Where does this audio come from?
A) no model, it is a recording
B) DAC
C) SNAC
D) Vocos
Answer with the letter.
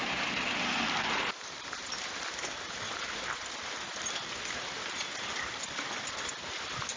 A